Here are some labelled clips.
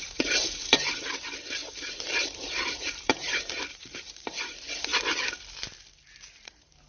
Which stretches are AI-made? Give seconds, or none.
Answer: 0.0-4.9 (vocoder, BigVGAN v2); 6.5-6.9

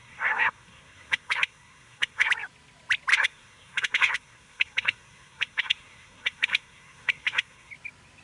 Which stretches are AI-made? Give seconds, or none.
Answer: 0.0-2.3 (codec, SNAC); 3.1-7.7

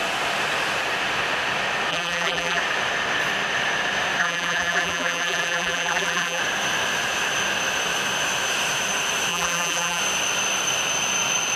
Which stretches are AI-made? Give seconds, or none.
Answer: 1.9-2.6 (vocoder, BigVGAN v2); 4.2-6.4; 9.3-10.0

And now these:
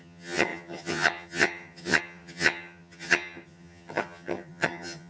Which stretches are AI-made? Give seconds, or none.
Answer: 0.0-5.1 (vocoder, HiFi-GAN)

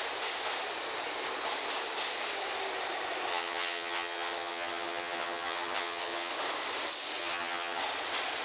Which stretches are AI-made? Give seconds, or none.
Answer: 3.3-6.3 (vocoder, HiFi-GAN); 7.2-7.8